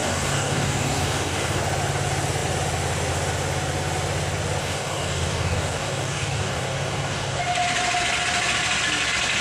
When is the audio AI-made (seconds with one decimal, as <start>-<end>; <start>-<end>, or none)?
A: 0.0-1.6; 4.6-7.4